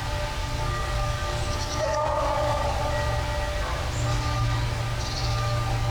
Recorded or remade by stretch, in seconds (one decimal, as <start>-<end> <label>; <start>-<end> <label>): 0.0-0.4 recorded; 0.4-3.1 remade; 3.1-4.1 recorded; 4.1-4.8 remade; 4.8-5.2 recorded; 5.2-5.9 remade